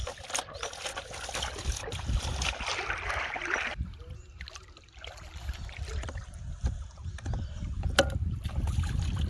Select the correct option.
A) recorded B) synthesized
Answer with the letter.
A